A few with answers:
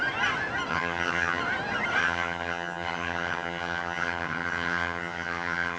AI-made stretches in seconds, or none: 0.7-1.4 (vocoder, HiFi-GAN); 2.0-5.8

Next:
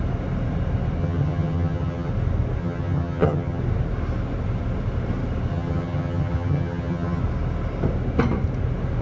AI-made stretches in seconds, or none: 1.0-2.1 (vocoder, HiFi-GAN); 2.6-3.6; 5.5-7.2

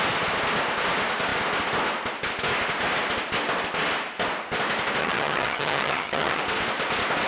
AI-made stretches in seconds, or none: 5.0-6.4 (vocoder, HiFi-GAN)

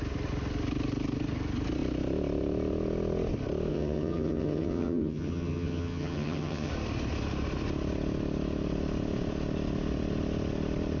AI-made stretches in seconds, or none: 3.7-6.7 (vocoder, HiFi-GAN)